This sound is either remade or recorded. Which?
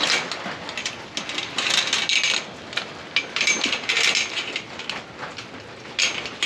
recorded